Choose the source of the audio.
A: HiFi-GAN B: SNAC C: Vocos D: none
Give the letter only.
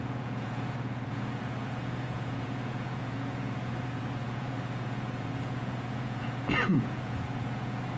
C